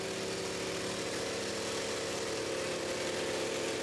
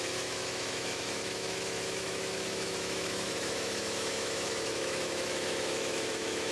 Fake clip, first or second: second